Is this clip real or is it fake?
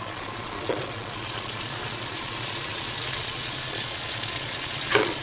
fake